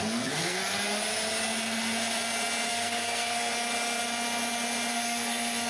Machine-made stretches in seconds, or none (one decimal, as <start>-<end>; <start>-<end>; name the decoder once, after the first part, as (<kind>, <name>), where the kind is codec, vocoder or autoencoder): 0.0-0.6 (codec, SNAC); 2.7-3.5; 4.9-5.7